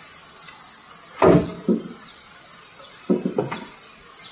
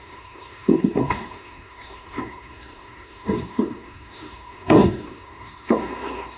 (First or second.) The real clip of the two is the first